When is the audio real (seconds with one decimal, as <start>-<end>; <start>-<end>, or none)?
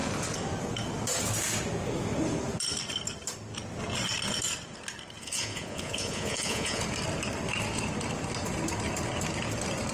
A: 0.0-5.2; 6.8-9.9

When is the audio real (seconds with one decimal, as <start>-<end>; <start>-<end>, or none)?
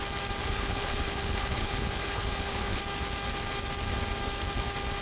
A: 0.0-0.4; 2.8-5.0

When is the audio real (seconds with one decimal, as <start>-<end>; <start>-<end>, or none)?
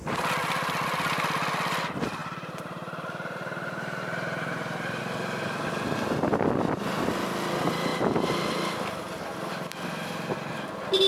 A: 0.0-2.2; 5.0-11.1